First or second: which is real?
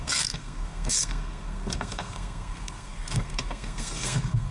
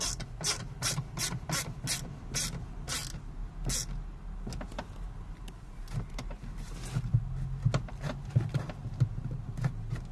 second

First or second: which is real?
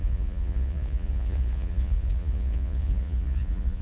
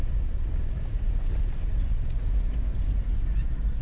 second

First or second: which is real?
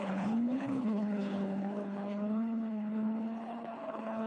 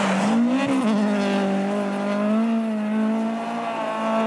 second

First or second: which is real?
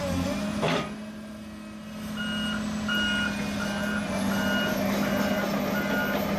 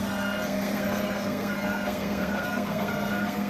first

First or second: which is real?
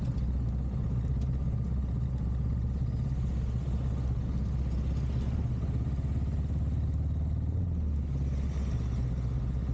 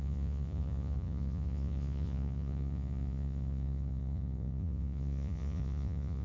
first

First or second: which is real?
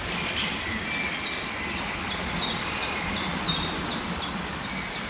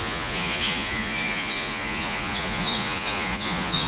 first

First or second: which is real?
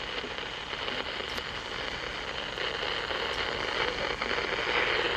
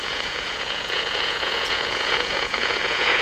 first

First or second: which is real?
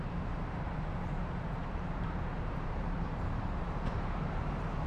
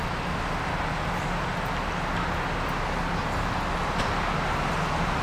second